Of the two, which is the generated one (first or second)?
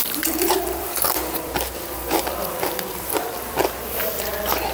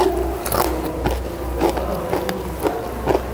first